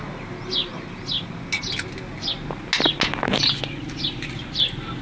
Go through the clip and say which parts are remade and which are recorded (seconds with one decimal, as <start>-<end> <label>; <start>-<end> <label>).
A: 0.0-5.0 recorded